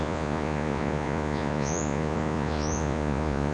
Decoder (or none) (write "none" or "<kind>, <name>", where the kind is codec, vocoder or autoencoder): vocoder, Vocos